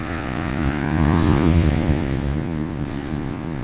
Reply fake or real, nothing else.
fake